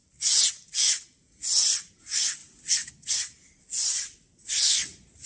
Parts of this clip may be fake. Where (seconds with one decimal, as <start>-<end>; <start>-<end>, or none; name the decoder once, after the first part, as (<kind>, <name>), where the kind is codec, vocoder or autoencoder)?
none